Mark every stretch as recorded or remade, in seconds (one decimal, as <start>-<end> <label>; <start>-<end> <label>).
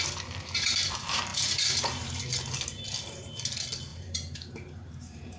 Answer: 0.0-1.3 recorded; 1.3-2.2 remade; 2.2-3.9 recorded; 3.9-5.4 remade